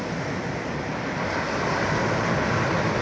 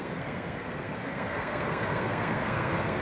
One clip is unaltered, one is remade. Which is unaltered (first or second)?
first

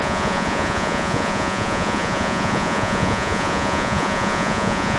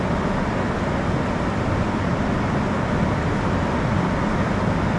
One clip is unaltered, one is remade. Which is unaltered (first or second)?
second